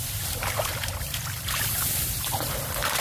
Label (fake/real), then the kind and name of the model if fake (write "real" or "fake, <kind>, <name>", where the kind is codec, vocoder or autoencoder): real